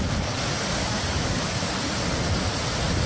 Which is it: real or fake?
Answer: real